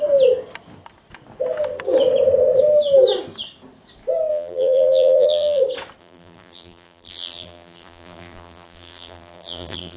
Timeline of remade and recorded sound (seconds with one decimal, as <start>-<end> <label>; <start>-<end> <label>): 0.0-4.3 recorded; 4.3-5.6 remade; 5.6-6.0 recorded; 6.0-10.0 remade